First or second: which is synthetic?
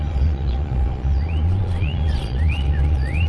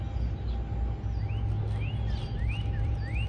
first